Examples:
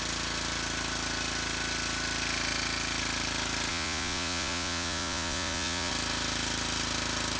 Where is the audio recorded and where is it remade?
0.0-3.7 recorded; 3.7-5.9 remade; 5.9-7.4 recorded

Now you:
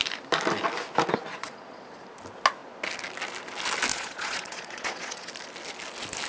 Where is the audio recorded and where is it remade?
0.0-1.3 recorded; 1.3-2.0 remade; 2.0-3.9 recorded; 3.9-5.3 remade; 5.3-6.3 recorded

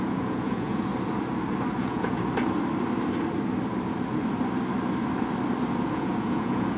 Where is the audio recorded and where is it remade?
0.0-0.9 remade; 0.9-1.8 recorded; 1.8-2.2 remade; 2.2-5.9 recorded; 5.9-6.8 remade